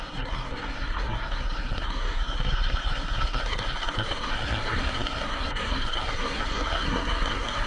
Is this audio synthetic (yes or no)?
yes